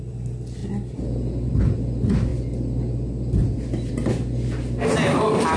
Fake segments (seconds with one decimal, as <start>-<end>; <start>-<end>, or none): none